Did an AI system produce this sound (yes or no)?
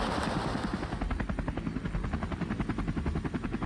no